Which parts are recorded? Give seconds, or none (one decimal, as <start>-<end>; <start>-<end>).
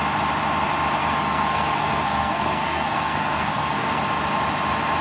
0.0-1.0; 4.0-5.0